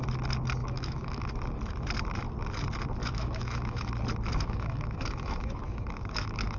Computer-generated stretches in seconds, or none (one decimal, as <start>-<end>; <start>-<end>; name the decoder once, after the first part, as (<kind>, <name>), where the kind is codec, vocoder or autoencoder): 0.6-1.3 (autoencoder, DAC-VAE); 3.0-3.9; 4.3-6.6